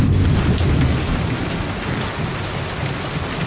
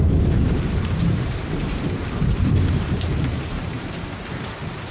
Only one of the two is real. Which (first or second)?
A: first